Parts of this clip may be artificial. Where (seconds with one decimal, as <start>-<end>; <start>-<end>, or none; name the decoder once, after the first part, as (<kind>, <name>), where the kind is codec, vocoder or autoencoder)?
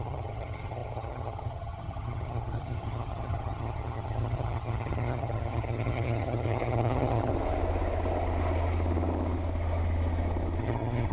0.0-7.3 (vocoder, HiFi-GAN); 10.6-11.1